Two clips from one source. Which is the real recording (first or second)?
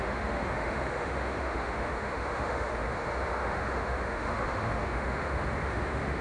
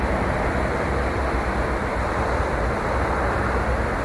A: second